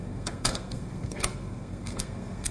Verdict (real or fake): fake